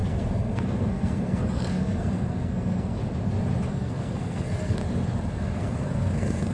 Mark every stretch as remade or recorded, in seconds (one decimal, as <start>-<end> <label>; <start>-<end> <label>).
0.0-3.0 remade; 3.0-3.7 recorded; 3.7-4.8 remade; 4.8-5.3 recorded; 5.3-6.5 remade